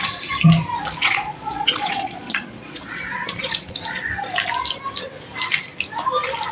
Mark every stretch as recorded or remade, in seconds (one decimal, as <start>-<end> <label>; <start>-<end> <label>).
0.0-1.0 recorded; 1.0-4.0 remade; 4.0-6.5 recorded

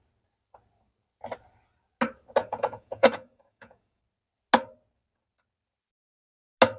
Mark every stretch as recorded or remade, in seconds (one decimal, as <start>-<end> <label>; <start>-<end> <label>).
0.0-2.4 recorded; 2.4-4.0 remade; 4.0-6.8 recorded